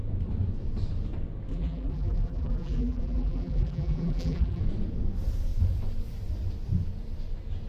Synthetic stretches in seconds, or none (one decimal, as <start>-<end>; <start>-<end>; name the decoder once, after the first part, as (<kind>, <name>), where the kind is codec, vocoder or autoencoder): 1.5-4.6 (vocoder, BigVGAN v2)